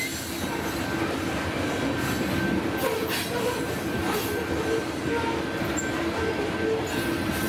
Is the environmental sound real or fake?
real